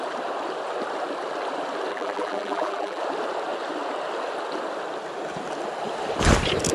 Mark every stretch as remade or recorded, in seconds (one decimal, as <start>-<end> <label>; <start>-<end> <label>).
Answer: 0.0-1.9 recorded; 1.9-3.0 remade; 3.0-6.7 recorded